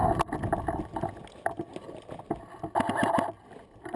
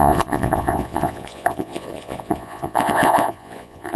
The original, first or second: first